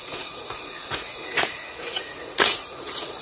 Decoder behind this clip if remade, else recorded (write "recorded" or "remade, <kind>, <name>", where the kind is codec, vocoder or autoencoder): remade, vocoder, Vocos